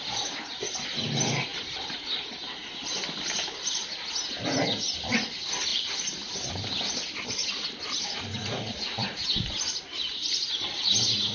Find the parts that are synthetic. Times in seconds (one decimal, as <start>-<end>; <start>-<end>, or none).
5.7-6.5